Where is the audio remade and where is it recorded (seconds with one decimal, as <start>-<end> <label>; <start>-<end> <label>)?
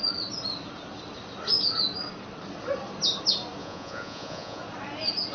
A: 0.0-3.6 recorded; 3.6-4.6 remade; 4.6-5.3 recorded